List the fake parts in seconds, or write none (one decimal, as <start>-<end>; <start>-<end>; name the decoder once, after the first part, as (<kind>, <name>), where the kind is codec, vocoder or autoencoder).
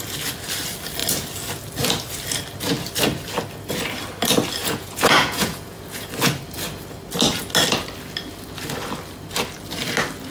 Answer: 4.6-6.1 (vocoder, Vocos)